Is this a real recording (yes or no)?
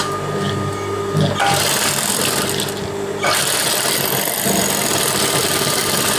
yes